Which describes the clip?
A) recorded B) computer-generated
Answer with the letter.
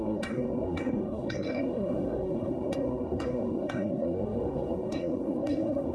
B